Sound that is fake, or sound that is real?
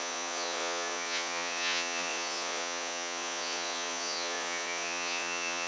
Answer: fake